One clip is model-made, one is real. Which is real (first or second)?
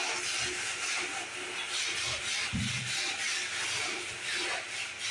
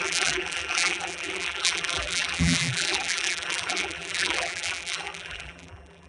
first